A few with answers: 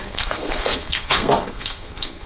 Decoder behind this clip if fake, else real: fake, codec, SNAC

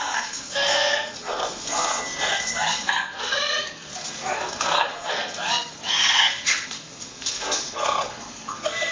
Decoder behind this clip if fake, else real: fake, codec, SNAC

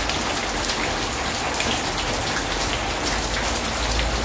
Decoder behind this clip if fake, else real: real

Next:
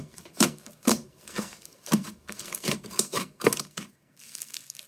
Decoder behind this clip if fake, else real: fake, codec, SNAC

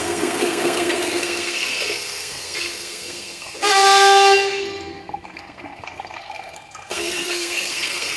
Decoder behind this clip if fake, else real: fake, codec, SNAC